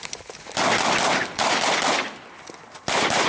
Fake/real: real